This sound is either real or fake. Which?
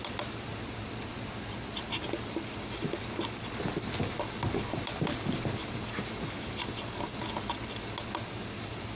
real